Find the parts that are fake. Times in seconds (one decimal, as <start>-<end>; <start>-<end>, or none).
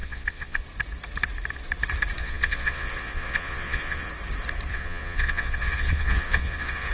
0.0-0.6; 2.2-4.1; 4.7-6.9